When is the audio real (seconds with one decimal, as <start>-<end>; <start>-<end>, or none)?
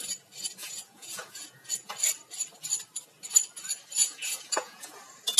0.0-0.6; 1.9-4.0; 5.0-5.4